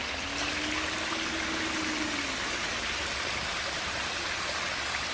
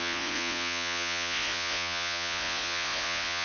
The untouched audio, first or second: first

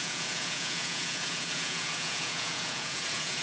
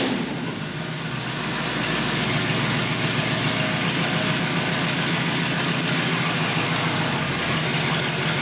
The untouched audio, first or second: second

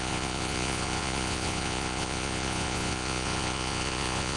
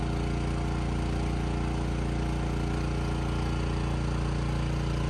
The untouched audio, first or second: second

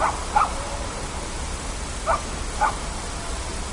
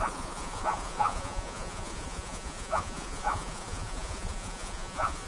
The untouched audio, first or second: first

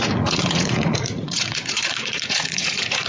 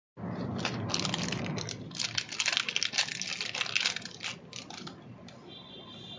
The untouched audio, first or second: second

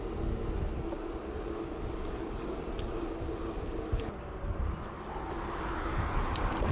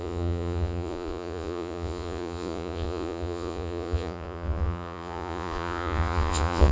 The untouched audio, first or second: first